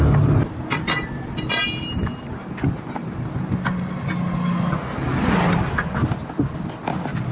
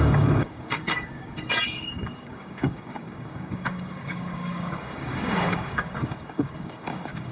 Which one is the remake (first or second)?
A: second